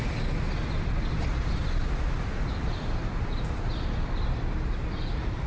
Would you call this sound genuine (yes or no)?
yes